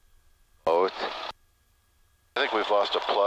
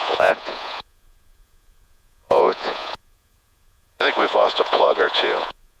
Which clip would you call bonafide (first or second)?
first